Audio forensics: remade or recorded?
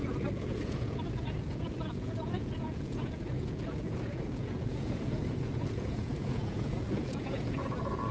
remade